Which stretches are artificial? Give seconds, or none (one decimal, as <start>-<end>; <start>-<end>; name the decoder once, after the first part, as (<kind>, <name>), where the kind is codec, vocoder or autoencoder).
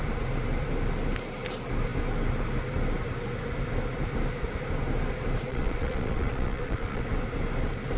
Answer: 5.5-7.0 (vocoder, Vocos)